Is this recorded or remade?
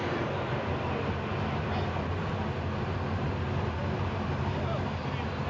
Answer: recorded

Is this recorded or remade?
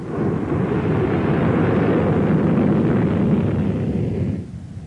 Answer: recorded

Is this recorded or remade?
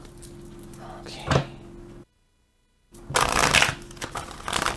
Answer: recorded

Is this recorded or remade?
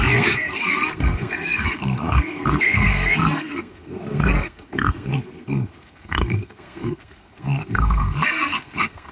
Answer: remade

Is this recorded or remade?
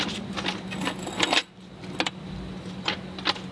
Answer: recorded